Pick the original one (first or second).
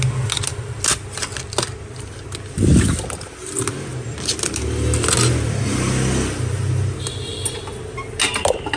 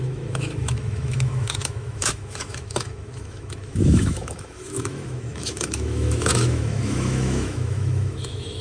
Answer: first